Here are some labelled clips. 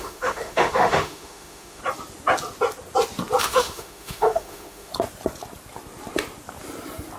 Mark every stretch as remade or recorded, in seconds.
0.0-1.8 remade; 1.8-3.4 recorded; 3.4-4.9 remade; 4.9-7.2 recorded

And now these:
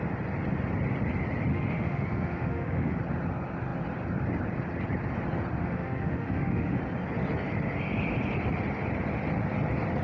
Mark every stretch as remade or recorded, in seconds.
0.0-1.5 recorded; 1.5-3.0 remade; 3.0-5.6 recorded; 5.6-6.8 remade; 6.8-10.0 recorded